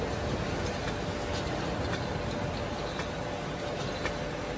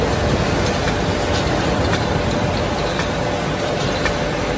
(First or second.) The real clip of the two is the first